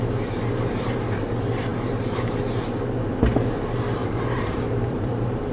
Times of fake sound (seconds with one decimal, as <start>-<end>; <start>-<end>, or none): 4.0-5.5